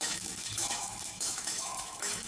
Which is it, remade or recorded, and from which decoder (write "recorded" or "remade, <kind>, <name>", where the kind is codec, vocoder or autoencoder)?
remade, autoencoder, DAC-VAE